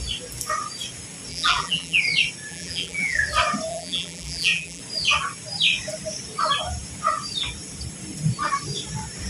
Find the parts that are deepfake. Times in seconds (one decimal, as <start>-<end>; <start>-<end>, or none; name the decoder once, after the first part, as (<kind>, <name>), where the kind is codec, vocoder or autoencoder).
1.3-2.0 (vocoder, BigVGAN v2); 2.5-3.2; 3.7-4.8